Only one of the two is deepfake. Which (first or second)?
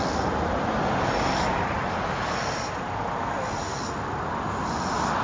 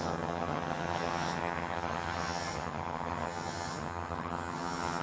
second